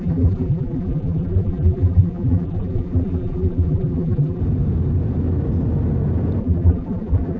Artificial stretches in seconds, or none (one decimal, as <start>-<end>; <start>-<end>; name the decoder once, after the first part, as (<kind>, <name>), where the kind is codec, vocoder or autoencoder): 0.0-4.4 (vocoder, BigVGAN v2); 6.4-7.4